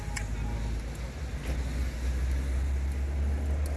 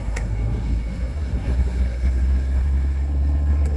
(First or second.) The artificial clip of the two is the second